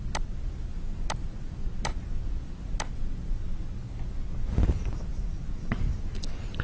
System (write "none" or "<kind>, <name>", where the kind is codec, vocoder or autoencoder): none